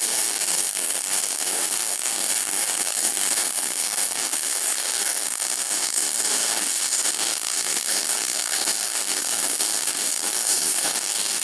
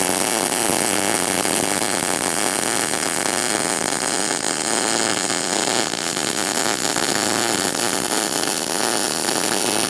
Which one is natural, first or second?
second